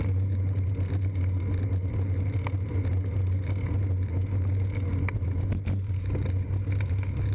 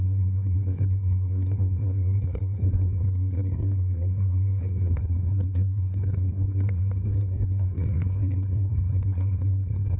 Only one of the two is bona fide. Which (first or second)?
first